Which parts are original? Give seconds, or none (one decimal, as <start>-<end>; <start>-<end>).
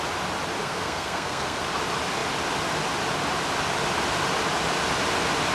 0.0-0.6; 1.6-5.5